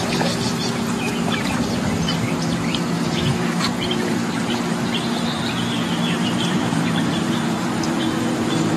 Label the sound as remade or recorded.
remade